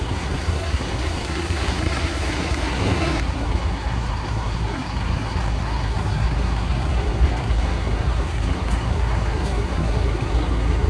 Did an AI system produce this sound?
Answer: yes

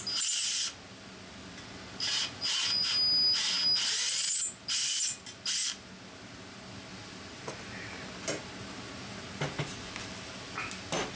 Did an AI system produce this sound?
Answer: no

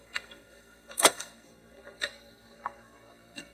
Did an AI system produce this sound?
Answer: yes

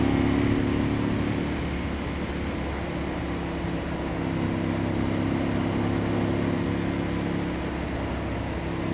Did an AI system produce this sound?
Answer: no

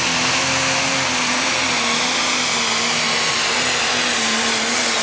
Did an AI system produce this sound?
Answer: no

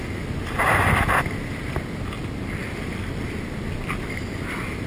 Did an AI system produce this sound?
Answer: no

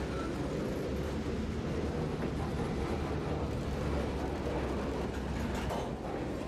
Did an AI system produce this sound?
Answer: no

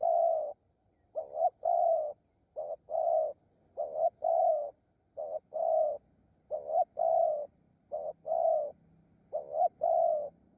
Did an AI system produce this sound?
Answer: no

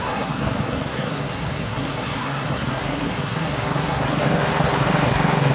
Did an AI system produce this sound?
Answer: yes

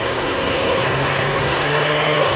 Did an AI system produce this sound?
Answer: yes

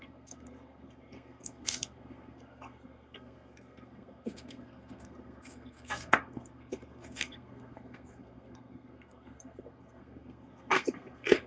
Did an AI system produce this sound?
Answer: yes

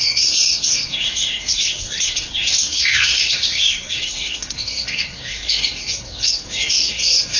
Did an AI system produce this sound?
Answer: yes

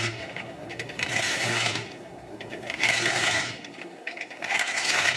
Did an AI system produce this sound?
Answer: yes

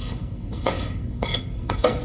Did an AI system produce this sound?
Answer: yes